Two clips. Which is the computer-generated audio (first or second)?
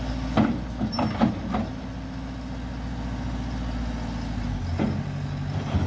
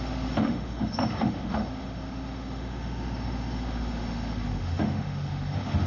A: second